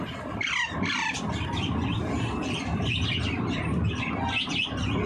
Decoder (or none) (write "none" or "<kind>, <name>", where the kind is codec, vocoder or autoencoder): vocoder, BigVGAN v2